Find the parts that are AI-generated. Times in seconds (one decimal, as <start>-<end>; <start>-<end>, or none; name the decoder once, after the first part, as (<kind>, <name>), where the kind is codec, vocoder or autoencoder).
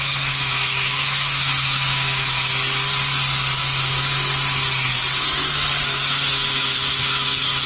0.0-2.5 (autoencoder, DAC-VAE); 5.8-7.7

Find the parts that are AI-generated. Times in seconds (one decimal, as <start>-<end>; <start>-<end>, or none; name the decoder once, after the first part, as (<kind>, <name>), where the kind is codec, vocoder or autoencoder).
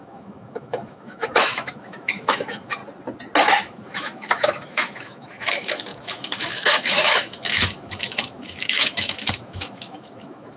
0.0-2.8 (autoencoder, DAC-VAE); 3.6-10.6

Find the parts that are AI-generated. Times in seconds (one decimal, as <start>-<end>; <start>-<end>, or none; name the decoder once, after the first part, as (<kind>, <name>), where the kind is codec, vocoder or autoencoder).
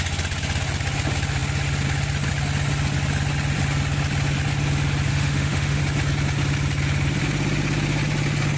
5.1-5.8 (autoencoder, DAC-VAE)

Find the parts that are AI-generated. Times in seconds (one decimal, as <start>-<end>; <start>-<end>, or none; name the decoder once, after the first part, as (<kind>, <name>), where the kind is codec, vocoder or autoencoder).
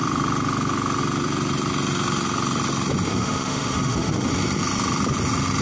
3.1-4.3 (autoencoder, DAC-VAE)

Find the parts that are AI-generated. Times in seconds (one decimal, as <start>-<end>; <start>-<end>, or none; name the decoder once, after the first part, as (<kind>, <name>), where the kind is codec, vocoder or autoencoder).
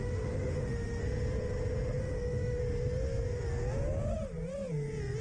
0.0-1.0 (autoencoder, DAC-VAE); 2.0-2.6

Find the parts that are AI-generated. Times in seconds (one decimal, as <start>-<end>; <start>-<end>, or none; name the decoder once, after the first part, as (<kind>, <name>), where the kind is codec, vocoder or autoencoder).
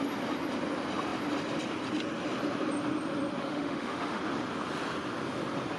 3.4-4.2 (autoencoder, DAC-VAE)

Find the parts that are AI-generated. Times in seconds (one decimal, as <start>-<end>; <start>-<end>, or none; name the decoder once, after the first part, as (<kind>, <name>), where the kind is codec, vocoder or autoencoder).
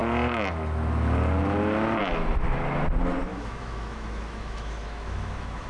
3.3-5.7 (autoencoder, DAC-VAE)